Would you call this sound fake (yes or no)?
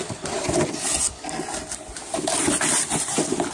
no